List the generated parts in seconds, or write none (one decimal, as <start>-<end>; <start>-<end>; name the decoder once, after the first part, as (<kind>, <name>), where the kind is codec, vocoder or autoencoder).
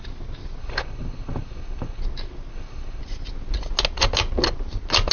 0.6-2.0 (codec, HILCodec); 2.5-3.0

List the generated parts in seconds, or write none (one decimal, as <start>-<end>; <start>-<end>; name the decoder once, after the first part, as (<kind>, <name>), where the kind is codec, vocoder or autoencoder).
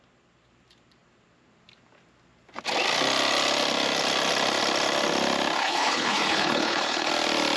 5.6-7.1 (codec, HILCodec)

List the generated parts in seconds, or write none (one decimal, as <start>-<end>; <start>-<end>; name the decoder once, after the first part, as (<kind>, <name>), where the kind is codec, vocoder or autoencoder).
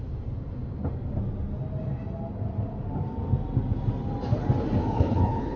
4.8-5.6 (codec, HILCodec)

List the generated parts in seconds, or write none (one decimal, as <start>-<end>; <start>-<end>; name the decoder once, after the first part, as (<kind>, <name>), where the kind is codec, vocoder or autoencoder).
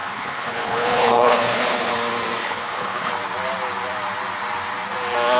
0.0-1.9 (codec, HILCodec); 2.4-3.1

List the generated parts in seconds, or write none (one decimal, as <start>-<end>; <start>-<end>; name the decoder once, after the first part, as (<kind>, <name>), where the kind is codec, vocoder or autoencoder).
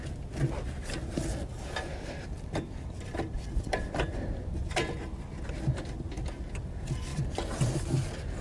none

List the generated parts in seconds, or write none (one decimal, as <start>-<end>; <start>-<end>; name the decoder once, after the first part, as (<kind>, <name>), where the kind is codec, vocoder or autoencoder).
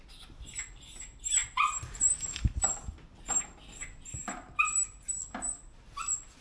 none